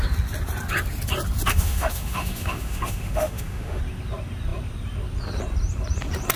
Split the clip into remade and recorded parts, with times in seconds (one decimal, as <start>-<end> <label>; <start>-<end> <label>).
0.0-1.5 recorded; 1.5-3.8 remade; 3.8-6.4 recorded